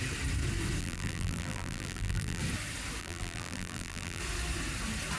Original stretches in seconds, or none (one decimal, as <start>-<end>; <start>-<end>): 0.0-0.8; 2.4-3.0; 4.2-5.2